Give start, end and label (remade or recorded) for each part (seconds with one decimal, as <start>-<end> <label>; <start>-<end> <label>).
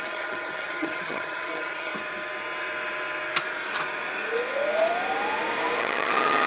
0.0-1.9 remade; 1.9-5.8 recorded; 5.8-6.5 remade